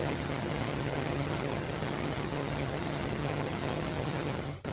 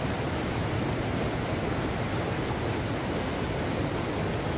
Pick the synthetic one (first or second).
first